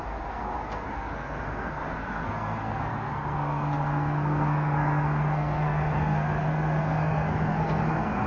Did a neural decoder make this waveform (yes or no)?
yes